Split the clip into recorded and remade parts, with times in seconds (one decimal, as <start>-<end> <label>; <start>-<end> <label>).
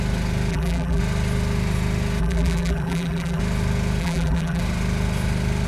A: 0.0-0.5 recorded; 0.5-1.0 remade; 1.0-2.2 recorded; 2.2-3.4 remade; 3.4-4.0 recorded; 4.0-4.6 remade; 4.6-5.7 recorded